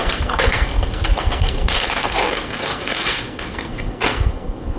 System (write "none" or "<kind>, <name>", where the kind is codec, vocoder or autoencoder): codec, SNAC